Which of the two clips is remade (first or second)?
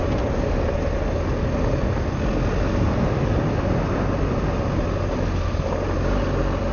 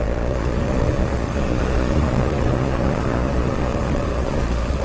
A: second